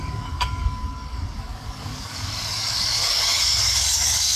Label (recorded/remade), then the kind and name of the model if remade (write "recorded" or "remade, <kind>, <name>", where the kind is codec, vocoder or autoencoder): remade, codec, DAC